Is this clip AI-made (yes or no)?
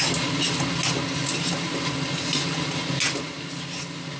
no